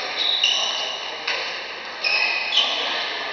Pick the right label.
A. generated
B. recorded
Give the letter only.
B